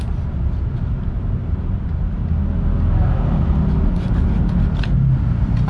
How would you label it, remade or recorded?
recorded